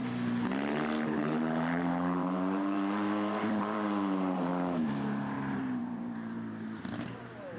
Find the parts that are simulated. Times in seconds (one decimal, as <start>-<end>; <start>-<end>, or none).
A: 1.2-4.5; 5.8-7.6